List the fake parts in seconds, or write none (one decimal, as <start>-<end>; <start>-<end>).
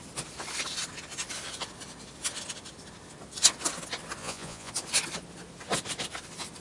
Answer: 4.2-4.7